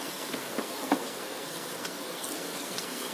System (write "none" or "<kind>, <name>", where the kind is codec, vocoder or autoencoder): codec, SNAC